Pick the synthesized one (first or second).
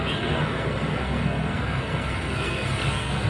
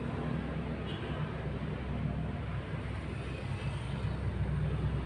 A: first